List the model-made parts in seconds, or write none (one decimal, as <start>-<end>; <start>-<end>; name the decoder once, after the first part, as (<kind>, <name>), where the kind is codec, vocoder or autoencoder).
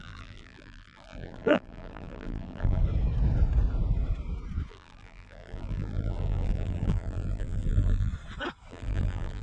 0.0-2.8 (vocoder, BigVGAN v2); 4.7-8.1; 8.7-9.4